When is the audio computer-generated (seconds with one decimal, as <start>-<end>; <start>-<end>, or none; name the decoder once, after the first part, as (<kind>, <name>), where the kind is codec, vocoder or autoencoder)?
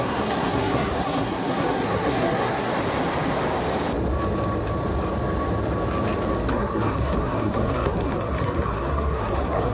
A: 0.0-2.7 (codec, SNAC); 6.5-9.7